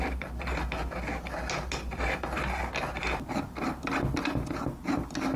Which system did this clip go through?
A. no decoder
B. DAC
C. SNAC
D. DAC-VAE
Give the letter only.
A